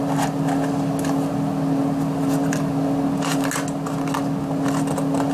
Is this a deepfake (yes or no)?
no